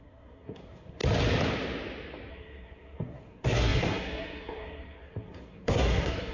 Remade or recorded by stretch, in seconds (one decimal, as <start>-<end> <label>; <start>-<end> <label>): 0.0-1.0 remade; 1.0-2.3 recorded; 2.3-6.3 remade